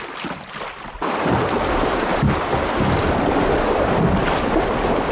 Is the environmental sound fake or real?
real